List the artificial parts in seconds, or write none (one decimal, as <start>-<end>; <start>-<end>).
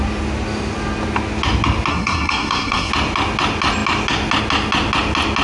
1.9-2.9